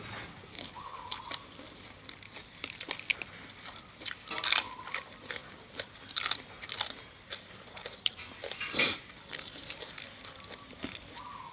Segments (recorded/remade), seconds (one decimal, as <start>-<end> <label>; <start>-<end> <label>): 0.0-0.5 recorded; 0.5-1.2 remade; 1.2-11.5 recorded